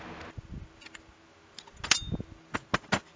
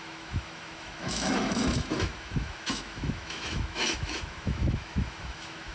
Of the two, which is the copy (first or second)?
second